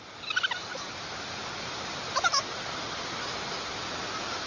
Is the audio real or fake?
real